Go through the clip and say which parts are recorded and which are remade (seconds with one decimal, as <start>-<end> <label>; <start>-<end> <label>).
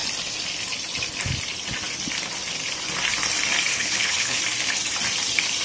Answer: 0.0-3.7 recorded; 3.7-4.4 remade; 4.4-5.6 recorded